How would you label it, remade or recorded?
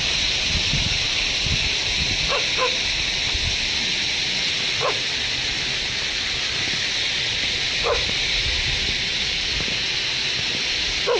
recorded